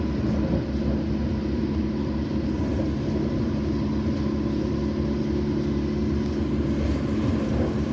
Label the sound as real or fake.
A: real